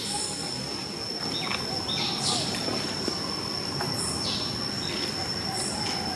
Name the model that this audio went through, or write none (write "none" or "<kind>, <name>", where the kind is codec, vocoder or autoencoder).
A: none